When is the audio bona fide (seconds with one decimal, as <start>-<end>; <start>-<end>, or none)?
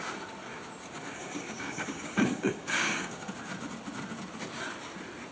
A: 0.0-1.2; 3.3-5.3